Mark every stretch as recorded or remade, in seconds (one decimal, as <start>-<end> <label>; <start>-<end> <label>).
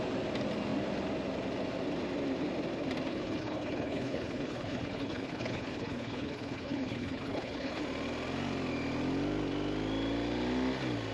0.0-3.1 recorded; 3.1-7.8 remade; 7.8-11.1 recorded